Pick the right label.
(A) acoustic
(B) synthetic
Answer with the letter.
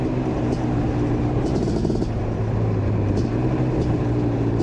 B